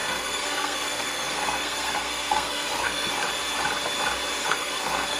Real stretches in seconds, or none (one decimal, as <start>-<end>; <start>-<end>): 3.1-4.4